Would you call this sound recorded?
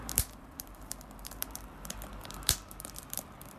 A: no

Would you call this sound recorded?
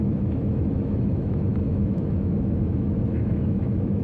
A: no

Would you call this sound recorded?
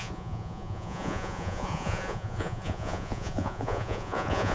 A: no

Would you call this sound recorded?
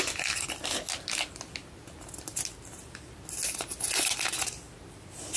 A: yes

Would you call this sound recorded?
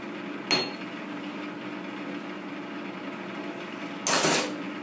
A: yes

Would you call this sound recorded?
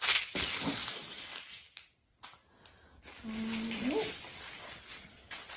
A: yes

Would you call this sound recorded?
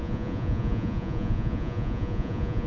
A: no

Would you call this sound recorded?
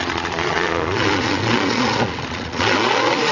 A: no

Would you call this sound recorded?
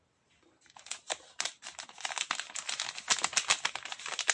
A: yes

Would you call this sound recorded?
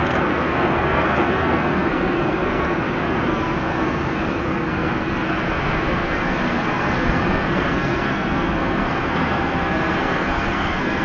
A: no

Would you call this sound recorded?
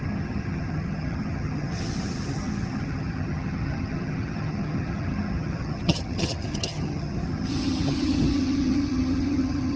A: no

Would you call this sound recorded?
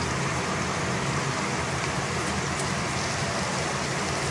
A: yes